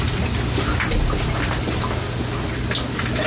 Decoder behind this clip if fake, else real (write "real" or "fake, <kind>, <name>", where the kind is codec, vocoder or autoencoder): real